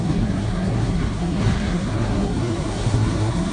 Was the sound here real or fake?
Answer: fake